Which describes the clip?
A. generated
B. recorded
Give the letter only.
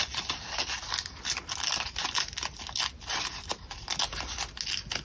B